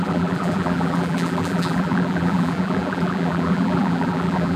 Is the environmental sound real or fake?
fake